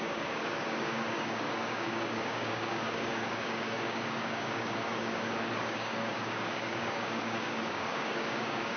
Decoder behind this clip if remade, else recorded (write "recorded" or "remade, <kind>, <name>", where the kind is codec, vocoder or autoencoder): remade, codec, DAC